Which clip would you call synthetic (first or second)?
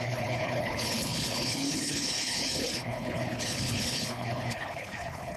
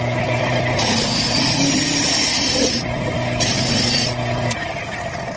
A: first